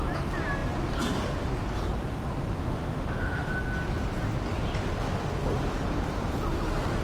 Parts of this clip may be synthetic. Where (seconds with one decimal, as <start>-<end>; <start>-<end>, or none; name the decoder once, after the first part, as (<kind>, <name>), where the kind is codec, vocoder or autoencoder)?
2.6-3.5 (autoencoder, DAC-VAE)